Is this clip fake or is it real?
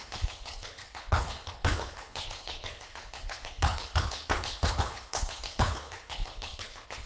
fake